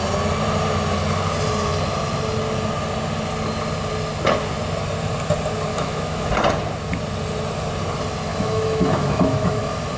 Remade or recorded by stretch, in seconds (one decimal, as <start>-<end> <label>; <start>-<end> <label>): 0.0-5.7 recorded; 5.7-6.3 remade; 6.3-8.3 recorded; 8.3-9.6 remade; 9.6-10.0 recorded